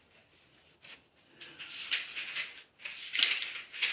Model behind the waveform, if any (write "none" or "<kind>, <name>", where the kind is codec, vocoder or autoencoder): none